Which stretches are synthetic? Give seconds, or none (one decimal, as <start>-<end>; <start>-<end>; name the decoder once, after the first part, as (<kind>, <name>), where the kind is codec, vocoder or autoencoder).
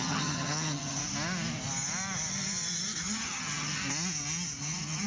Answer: 0.0-1.0 (vocoder, HiFi-GAN); 3.0-3.8; 4.6-5.1